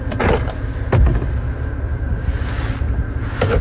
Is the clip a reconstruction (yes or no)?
no